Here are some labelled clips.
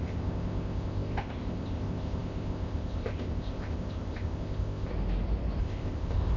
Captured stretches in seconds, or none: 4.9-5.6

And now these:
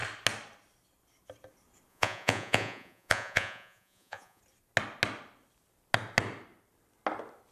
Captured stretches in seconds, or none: 0.0-1.9; 4.4-7.5

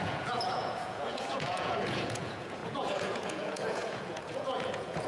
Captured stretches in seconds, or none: none

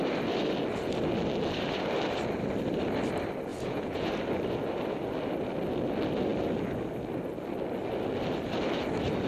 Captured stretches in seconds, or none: 0.0-3.5; 4.1-9.3

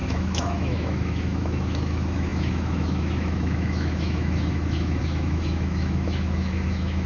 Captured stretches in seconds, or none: none

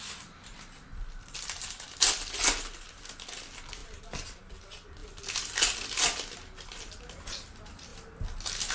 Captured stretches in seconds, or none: 0.0-3.8; 4.4-5.0; 5.6-8.7